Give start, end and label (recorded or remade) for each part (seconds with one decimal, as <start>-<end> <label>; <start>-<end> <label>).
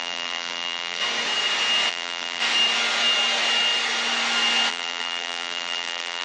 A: 0.0-1.0 remade; 1.0-1.9 recorded; 1.9-2.4 remade; 2.4-4.7 recorded; 4.7-6.2 remade